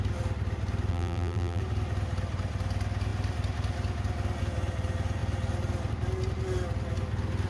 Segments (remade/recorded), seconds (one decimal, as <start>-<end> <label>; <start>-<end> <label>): 0.0-0.9 recorded; 0.9-1.6 remade; 1.6-7.5 recorded